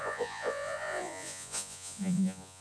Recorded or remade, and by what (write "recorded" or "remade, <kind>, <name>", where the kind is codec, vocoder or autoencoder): remade, vocoder, Vocos